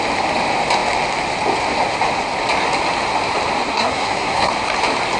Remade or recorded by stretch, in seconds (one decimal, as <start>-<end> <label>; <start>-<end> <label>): 0.0-3.7 recorded; 3.7-4.5 remade; 4.5-5.2 recorded